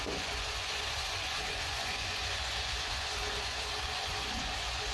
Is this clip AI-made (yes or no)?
yes